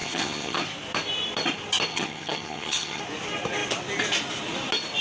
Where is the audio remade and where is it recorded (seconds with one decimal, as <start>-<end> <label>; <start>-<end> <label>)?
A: 0.0-0.6 remade; 0.6-1.9 recorded; 1.9-3.0 remade; 3.0-5.0 recorded